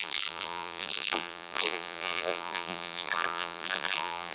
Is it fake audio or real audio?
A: fake